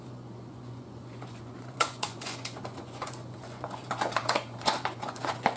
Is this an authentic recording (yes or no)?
no